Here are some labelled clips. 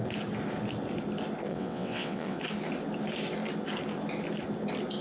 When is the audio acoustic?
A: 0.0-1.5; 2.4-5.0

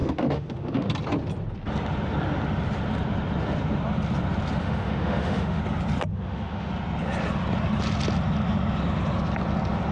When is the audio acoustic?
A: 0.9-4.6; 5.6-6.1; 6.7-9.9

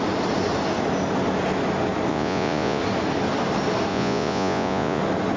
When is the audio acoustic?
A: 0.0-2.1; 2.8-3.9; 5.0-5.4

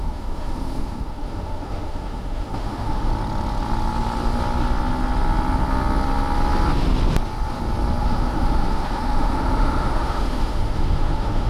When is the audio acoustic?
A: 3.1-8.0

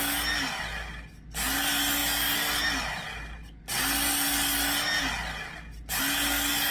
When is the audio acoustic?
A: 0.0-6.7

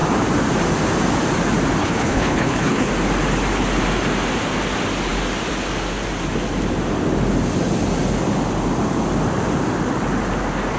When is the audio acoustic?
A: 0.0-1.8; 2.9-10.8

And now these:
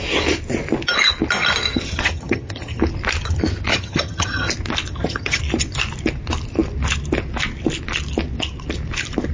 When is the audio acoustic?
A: 0.0-1.7; 2.8-3.7; 4.5-4.9; 5.4-9.3